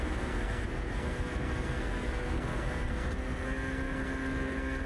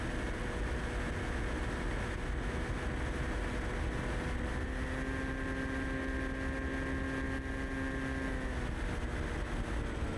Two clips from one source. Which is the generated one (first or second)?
first